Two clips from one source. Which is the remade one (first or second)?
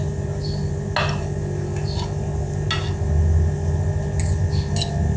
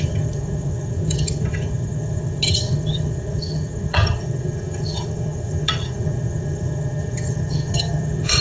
second